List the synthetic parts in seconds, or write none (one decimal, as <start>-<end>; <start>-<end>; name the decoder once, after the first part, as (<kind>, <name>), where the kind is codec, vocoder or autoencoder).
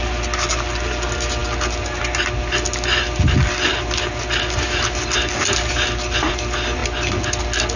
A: none